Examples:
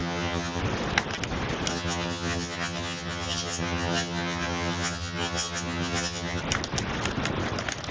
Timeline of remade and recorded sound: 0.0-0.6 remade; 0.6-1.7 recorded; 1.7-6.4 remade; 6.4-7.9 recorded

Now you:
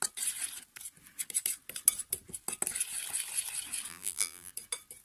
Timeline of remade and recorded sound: 0.0-3.9 recorded; 3.9-4.5 remade; 4.5-5.0 recorded

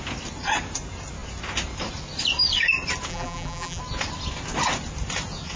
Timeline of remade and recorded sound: 0.0-3.1 recorded; 3.1-3.8 remade; 3.8-5.6 recorded

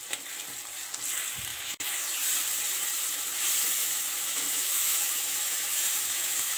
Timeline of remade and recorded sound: 0.0-1.5 recorded; 1.5-2.1 remade; 2.1-3.8 recorded; 3.8-6.6 remade

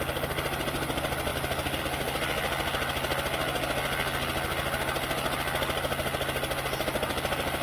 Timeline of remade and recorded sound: 0.0-7.6 recorded

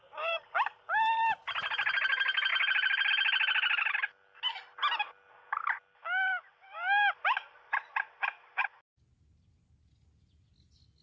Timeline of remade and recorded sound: 0.0-2.5 recorded; 2.5-3.1 remade; 3.1-11.0 recorded

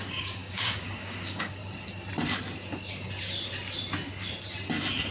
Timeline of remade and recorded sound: 0.0-1.6 remade; 1.6-5.1 recorded

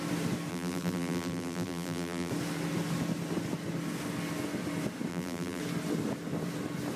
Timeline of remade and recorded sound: 0.0-0.5 recorded; 0.5-2.3 remade; 2.3-5.1 recorded; 5.1-5.6 remade; 5.6-7.0 recorded